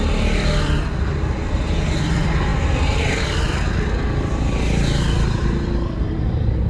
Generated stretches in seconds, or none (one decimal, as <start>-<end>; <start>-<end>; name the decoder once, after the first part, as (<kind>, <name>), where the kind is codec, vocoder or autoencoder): 0.0-2.5 (vocoder, BigVGAN v2); 3.0-6.7